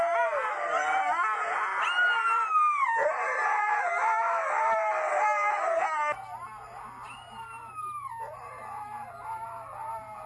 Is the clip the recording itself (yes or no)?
yes